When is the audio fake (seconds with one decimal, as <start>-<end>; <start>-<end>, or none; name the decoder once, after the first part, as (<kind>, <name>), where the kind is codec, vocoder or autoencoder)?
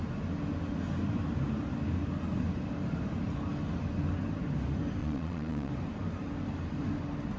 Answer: 5.0-5.7 (vocoder, Vocos)